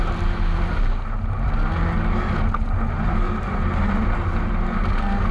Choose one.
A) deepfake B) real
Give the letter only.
B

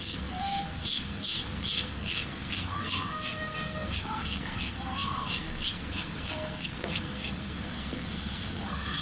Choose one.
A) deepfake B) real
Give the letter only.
A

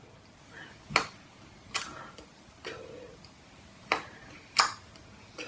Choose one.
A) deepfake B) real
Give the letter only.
B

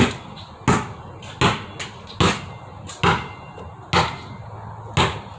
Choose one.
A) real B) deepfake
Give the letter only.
A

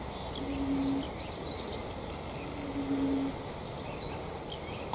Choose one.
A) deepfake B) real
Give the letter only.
B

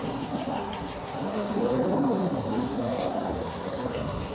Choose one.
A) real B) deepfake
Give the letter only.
B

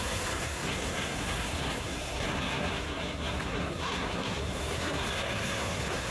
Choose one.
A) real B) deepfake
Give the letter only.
B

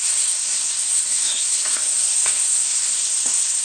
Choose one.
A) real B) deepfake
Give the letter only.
B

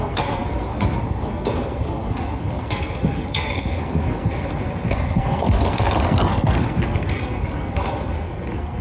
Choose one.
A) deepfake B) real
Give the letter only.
A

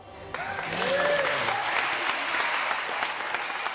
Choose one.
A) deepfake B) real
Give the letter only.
B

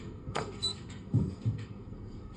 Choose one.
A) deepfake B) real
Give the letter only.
A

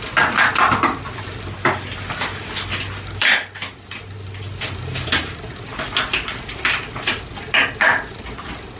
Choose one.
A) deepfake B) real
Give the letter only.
B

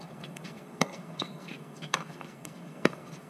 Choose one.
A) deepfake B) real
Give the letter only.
A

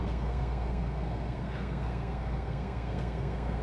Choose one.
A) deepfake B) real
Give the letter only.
A